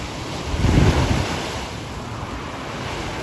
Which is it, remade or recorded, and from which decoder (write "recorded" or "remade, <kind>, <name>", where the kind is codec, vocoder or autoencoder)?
recorded